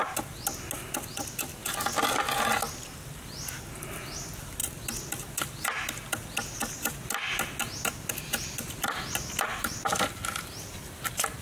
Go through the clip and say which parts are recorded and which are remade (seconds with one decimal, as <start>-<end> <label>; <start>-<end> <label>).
0.0-9.5 recorded; 9.5-11.4 remade